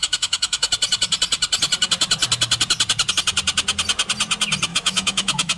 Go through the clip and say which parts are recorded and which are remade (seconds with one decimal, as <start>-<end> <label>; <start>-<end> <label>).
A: 0.0-0.7 remade; 0.7-4.7 recorded; 4.7-5.6 remade